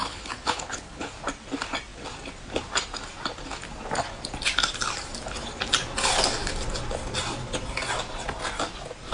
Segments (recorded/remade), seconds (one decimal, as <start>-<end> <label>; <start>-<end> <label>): 0.0-1.1 remade; 1.1-9.1 recorded